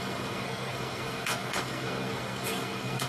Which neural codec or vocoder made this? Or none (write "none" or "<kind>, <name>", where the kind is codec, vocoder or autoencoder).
codec, SNAC